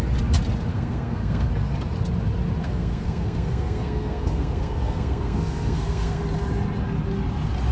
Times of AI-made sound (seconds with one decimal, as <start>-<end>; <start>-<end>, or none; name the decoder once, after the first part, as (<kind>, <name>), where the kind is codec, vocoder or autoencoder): 0.7-1.5 (codec, SNAC); 2.6-6.2